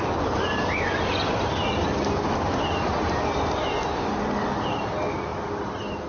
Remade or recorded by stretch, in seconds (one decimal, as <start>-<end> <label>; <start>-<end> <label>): 0.0-6.1 recorded